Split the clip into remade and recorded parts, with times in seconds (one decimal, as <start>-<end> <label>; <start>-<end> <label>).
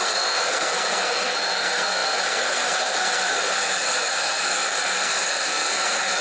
0.0-6.2 remade